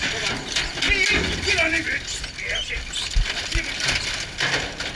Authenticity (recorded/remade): recorded